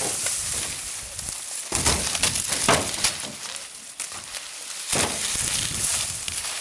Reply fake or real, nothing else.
real